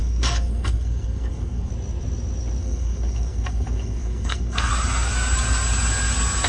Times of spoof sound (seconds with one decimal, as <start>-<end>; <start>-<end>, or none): 0.0-1.7; 2.6-4.7